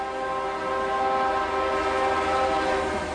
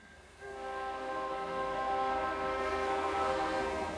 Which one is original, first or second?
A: first